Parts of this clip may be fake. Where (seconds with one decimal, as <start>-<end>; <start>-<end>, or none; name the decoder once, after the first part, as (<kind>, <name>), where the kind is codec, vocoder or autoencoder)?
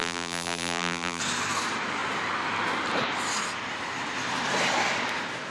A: 0.0-1.2 (vocoder, BigVGAN v2)